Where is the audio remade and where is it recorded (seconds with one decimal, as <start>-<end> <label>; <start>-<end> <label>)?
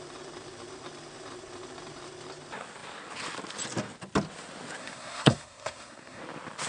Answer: 0.0-4.8 recorded; 4.8-6.2 remade; 6.2-6.7 recorded